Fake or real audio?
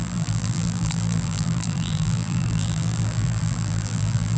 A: fake